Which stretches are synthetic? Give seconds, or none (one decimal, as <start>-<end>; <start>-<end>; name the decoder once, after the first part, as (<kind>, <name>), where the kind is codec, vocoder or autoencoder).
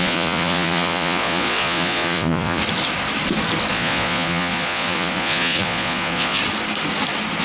0.0-2.6 (vocoder, Vocos); 3.7-6.4